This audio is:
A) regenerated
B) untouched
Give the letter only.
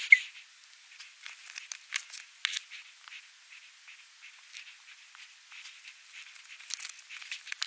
B